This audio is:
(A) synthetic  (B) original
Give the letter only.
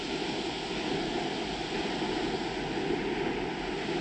B